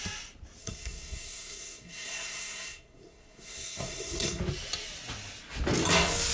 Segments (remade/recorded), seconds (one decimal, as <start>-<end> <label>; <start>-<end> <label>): 0.0-0.6 recorded; 0.6-4.4 remade; 4.4-6.3 recorded